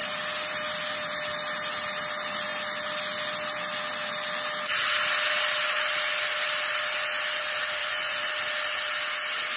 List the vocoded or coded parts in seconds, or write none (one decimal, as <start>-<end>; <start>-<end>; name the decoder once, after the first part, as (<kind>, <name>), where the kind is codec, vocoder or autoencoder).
7.8-8.3 (vocoder, Vocos)